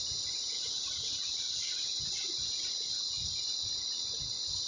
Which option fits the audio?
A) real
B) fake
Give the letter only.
A